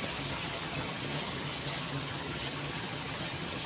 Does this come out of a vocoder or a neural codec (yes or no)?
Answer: yes